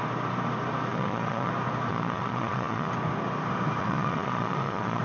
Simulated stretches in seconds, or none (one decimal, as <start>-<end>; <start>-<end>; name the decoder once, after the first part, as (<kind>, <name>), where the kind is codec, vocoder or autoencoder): 0.9-1.5 (vocoder, Vocos); 1.9-2.9; 3.8-5.0